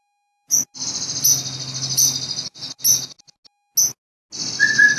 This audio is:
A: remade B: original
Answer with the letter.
B